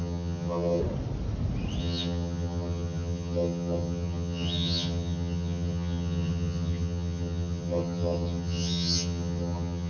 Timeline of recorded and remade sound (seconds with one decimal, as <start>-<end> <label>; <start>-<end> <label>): 0.0-0.8 remade; 0.8-1.8 recorded; 1.8-9.9 remade